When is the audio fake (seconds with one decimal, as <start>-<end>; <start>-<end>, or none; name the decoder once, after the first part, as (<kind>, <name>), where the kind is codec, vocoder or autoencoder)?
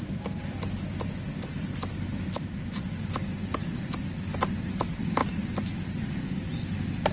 none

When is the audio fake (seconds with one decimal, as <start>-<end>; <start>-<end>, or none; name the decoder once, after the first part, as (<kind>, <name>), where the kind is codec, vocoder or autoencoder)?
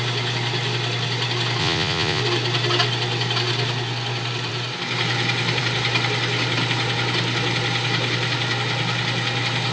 1.6-2.2 (vocoder, Vocos)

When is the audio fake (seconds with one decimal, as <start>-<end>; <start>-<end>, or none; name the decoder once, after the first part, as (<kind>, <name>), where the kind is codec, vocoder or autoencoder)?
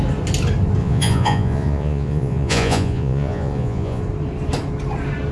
0.8-4.0 (vocoder, Vocos)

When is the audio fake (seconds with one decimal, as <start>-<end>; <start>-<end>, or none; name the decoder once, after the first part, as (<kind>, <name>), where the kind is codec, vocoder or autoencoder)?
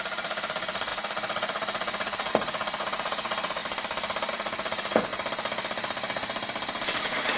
0.0-3.6 (vocoder, Vocos); 4.3-5.1; 7.0-7.4